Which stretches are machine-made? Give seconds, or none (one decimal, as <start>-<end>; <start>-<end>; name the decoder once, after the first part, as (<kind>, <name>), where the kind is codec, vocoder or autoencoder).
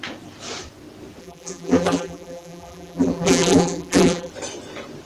1.2-4.3 (vocoder, BigVGAN v2)